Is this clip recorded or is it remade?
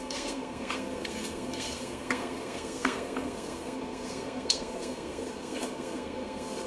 remade